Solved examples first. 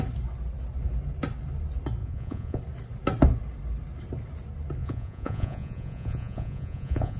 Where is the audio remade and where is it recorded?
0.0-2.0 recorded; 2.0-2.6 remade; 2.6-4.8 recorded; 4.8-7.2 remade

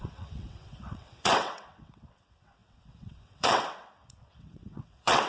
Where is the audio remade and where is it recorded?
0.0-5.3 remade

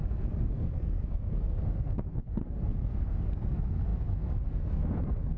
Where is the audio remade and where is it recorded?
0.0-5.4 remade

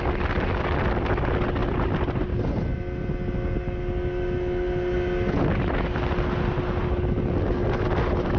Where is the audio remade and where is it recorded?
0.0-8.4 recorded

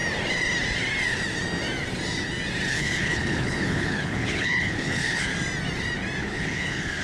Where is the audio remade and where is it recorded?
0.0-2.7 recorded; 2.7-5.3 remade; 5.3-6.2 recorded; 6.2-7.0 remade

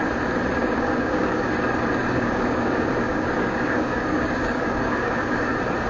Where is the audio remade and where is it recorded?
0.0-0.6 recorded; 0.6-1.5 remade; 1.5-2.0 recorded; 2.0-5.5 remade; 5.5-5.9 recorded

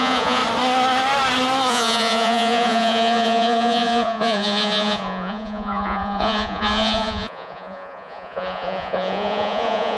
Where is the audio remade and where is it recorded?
0.0-0.4 remade; 0.4-1.7 recorded; 1.7-10.0 remade

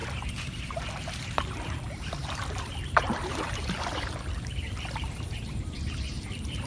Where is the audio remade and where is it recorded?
0.0-6.7 remade